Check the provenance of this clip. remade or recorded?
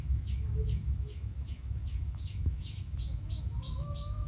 remade